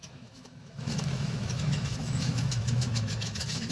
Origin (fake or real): fake